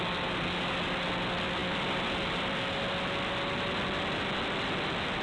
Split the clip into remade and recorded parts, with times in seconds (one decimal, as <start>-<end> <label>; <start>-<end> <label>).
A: 0.0-5.2 recorded